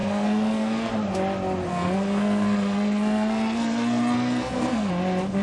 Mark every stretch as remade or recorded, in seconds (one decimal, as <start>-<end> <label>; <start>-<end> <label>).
0.0-0.9 remade; 0.9-1.7 recorded; 1.7-4.9 remade; 4.9-5.4 recorded